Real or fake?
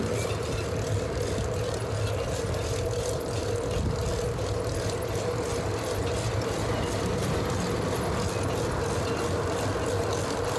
real